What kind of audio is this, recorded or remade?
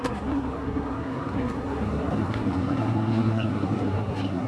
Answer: remade